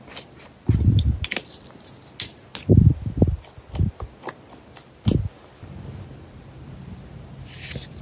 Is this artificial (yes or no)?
no